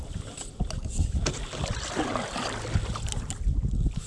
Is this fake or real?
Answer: real